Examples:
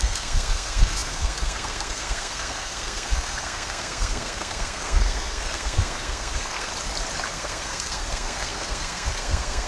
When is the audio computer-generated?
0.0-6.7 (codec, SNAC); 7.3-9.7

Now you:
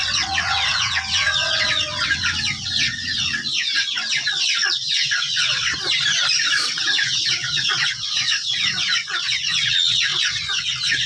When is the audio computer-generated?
0.0-5.7 (vocoder, WaveNeXt); 6.7-11.1

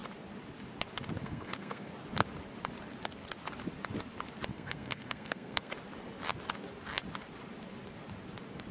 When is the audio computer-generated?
1.2-1.9 (codec, SNAC); 4.5-5.7

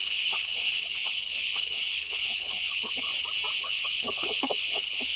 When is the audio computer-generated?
0.0-3.1 (codec, HILCodec); 3.6-5.2

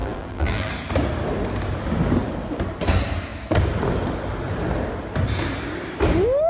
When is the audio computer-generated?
0.0-0.7 (vocoder, BigVGAN v2)

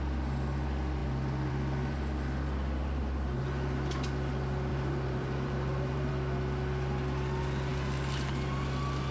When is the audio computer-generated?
2.8-3.4 (vocoder, BigVGAN v2); 4.7-6.1

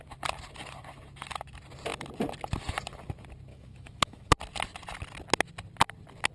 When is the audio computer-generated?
3.5-4.3 (autoencoder, DAC-VAE)

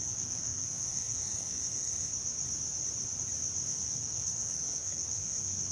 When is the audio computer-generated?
0.0-1.9 (codec, SNAC); 3.7-5.7